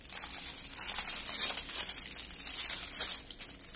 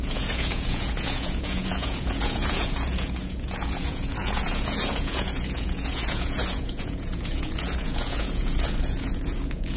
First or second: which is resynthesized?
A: second